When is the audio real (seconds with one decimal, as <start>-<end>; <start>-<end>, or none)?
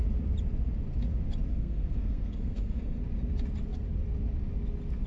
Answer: 0.0-1.5; 3.0-5.1